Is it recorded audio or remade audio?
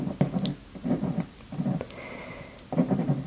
recorded